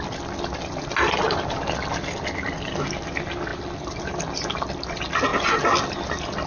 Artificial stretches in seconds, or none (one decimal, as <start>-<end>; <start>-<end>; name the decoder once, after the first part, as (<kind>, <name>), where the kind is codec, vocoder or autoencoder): 3.5-4.4 (vocoder, BigVGAN v2)